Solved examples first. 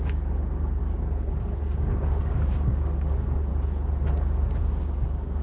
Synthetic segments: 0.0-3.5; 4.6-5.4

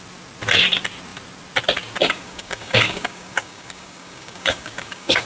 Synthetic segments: 2.0-5.3

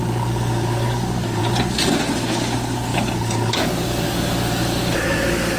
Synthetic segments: 0.0-1.4; 2.0-5.6

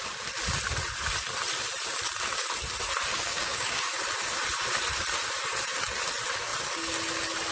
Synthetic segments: 3.1-3.8

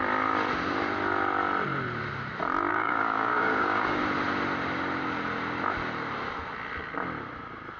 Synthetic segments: 2.7-4.0

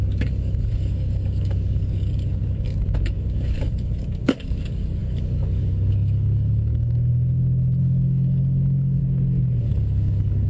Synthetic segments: 0.0-7.1; 7.8-9.0; 9.6-10.5